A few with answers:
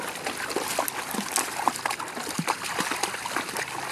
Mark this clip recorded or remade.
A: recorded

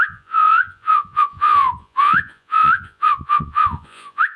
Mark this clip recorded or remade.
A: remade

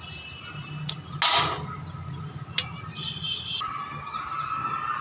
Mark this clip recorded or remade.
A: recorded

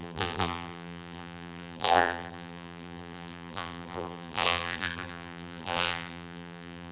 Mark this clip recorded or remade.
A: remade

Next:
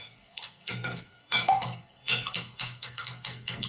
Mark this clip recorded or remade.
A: remade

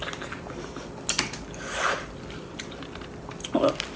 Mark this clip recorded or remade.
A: recorded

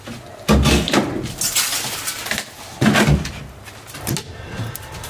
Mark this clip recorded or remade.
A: recorded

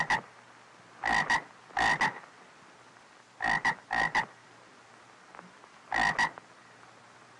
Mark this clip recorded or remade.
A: recorded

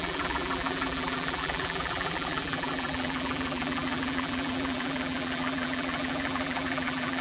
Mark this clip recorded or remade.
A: remade